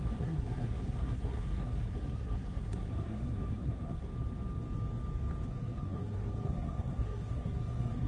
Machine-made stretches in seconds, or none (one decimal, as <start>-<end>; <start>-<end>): 0.0-4.1; 5.5-8.1